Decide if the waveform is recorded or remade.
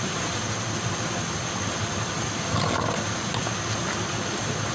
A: recorded